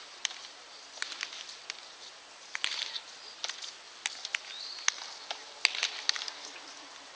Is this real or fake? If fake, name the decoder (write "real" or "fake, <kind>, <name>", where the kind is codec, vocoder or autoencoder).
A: real